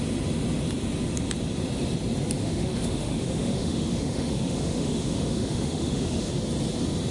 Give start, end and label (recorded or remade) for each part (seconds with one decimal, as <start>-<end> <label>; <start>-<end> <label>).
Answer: 0.0-2.4 recorded; 2.4-6.3 remade; 6.3-7.1 recorded